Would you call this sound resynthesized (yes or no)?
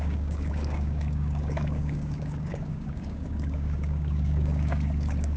yes